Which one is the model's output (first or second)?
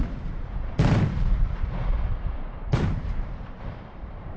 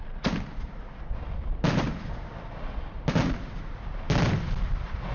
first